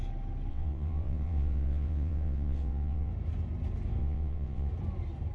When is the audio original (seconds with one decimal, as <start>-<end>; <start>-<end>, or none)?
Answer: 0.0-0.5; 3.1-4.0; 4.7-5.3